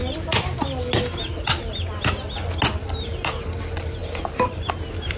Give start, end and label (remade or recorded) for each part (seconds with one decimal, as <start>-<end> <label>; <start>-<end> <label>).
0.0-2.8 recorded; 2.8-3.6 remade; 3.6-4.0 recorded; 4.0-4.7 remade; 4.7-5.2 recorded